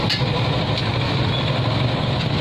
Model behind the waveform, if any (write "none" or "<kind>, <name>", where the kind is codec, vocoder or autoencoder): none